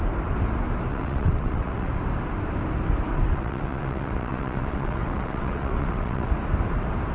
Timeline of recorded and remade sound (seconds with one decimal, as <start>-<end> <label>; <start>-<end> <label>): 0.0-0.9 recorded; 0.9-1.9 remade; 1.9-3.1 recorded; 3.1-6.3 remade; 6.3-7.1 recorded